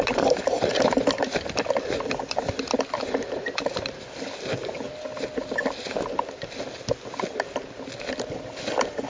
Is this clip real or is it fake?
real